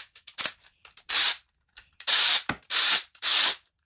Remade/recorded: remade